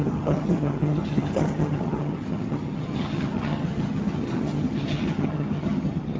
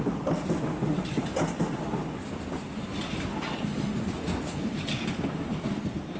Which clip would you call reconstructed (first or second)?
first